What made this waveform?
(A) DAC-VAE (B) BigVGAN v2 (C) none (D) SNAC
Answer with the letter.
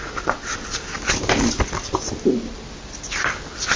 C